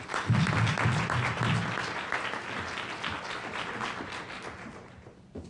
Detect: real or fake real